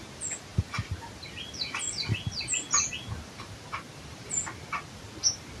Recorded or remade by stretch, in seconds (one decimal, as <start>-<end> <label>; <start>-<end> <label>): 0.0-5.6 recorded